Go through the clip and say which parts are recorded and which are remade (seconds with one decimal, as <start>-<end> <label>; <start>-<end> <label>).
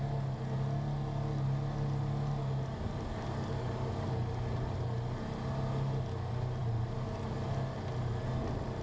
0.0-8.8 recorded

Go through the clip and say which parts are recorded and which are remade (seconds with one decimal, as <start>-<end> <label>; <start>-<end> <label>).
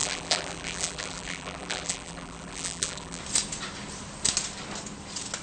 0.0-3.2 remade; 3.2-5.4 recorded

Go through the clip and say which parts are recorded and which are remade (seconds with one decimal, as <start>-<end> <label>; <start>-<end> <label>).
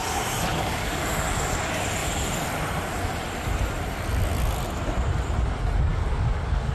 0.0-0.5 recorded; 0.5-1.0 remade; 1.0-5.9 recorded; 5.9-6.7 remade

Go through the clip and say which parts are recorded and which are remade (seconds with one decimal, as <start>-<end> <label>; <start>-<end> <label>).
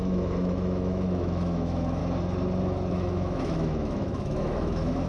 0.0-2.0 remade; 2.0-2.9 recorded; 2.9-5.1 remade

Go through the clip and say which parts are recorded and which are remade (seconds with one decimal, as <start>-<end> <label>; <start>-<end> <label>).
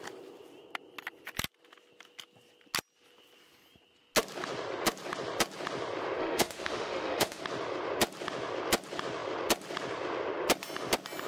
0.0-6.2 recorded; 6.2-7.4 remade; 7.4-11.3 recorded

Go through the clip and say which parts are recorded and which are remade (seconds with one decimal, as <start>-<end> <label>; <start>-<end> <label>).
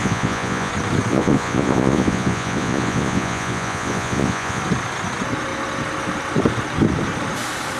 0.0-0.7 remade; 0.7-1.1 recorded; 1.1-4.6 remade; 4.6-7.8 recorded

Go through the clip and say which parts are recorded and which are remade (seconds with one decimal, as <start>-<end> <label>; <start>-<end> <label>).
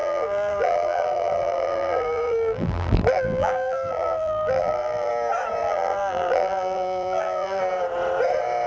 0.0-5.1 remade; 5.1-5.6 recorded; 5.6-7.6 remade; 7.6-8.7 recorded